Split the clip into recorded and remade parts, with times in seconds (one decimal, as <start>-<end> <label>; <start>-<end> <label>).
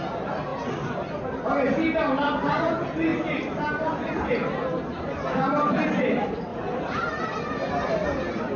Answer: 0.0-6.5 recorded; 6.5-7.0 remade; 7.0-8.6 recorded